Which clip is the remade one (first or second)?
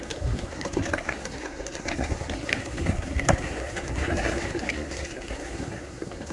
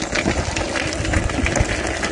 first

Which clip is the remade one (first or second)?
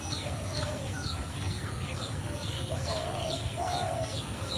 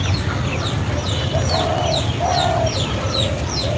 first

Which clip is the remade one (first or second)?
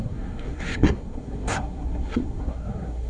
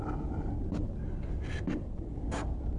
first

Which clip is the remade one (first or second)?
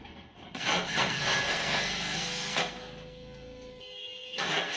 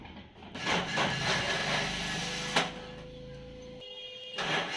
first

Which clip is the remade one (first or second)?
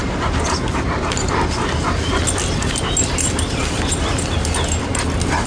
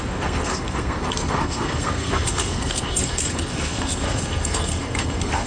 second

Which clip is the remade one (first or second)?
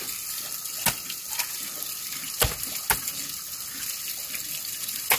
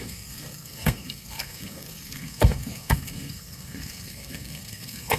second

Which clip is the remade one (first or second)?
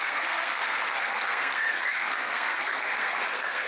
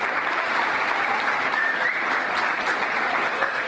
first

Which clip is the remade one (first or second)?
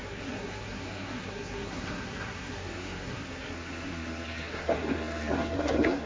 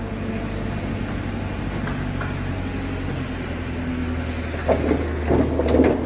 first